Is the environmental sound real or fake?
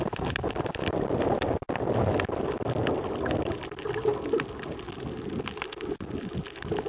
real